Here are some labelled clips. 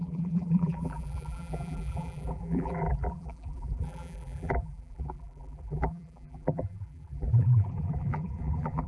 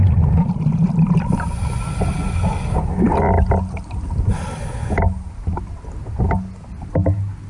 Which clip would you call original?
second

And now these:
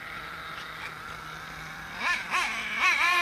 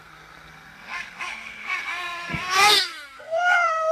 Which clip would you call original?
first